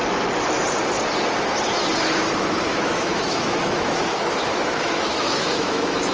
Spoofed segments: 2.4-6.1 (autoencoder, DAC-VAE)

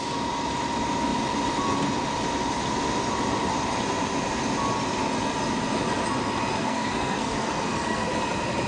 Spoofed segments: 6.6-8.1 (codec, SNAC)

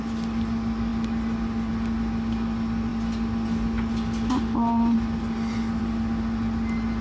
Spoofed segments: none

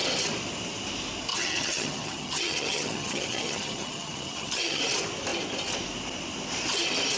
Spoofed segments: 1.3-4.8 (vocoder, HiFi-GAN)

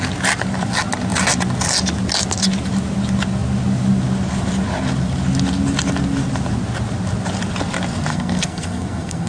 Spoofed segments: 8.1-9.3 (codec, SNAC)